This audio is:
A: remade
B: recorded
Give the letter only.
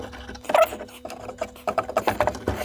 B